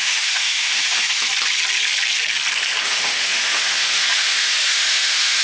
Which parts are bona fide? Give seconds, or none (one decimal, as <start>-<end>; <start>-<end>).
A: 1.2-2.8